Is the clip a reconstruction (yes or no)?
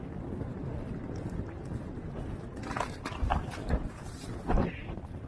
no